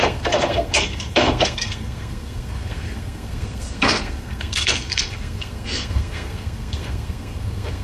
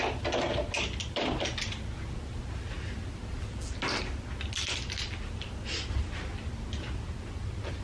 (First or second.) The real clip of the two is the second